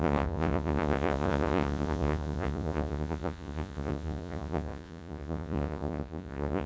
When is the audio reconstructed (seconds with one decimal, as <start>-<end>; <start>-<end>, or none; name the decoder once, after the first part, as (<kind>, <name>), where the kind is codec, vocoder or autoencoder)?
0.0-6.7 (vocoder, Vocos)